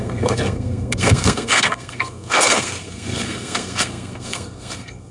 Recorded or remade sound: remade